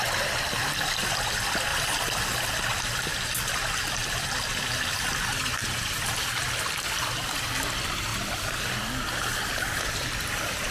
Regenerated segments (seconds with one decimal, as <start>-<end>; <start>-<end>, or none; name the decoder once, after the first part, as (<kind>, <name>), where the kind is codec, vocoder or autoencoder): 1.7-2.6 (vocoder, BigVGAN v2); 8.1-8.7